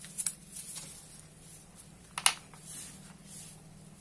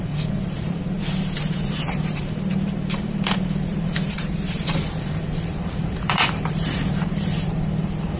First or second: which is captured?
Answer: first